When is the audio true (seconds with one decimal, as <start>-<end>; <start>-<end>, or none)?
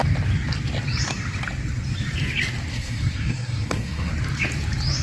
0.0-2.7; 4.1-5.0